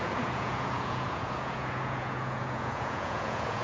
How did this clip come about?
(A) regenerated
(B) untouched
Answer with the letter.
A